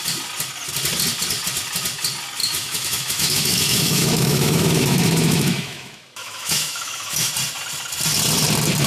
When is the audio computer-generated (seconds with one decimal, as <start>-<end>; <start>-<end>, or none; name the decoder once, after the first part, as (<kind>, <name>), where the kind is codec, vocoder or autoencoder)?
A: 2.4-7.3 (autoencoder, DAC-VAE)